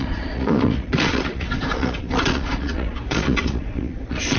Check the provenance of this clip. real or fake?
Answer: fake